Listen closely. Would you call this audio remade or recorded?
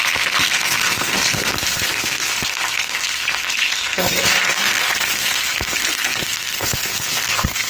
remade